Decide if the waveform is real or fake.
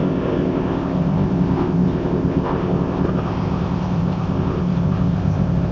fake